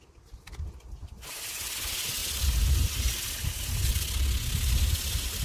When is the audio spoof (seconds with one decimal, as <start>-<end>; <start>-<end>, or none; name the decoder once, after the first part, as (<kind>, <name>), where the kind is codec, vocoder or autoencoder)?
none